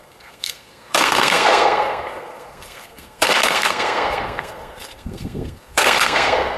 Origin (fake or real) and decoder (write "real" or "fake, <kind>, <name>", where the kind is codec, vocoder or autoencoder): fake, codec, SNAC